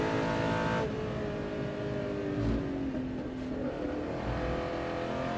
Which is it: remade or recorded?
recorded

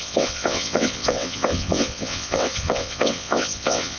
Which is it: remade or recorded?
remade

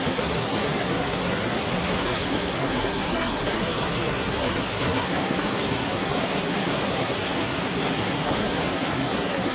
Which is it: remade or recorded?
remade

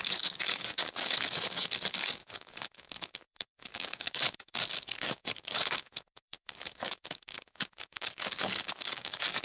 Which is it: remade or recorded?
remade